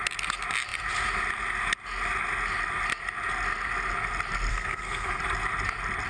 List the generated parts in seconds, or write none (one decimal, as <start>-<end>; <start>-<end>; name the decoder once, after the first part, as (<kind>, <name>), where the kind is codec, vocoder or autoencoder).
4.5-5.2 (codec, SNAC)